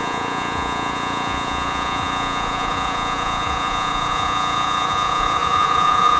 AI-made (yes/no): yes